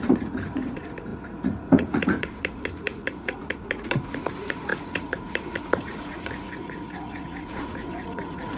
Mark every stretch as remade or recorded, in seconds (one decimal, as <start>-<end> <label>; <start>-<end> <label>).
0.0-8.6 remade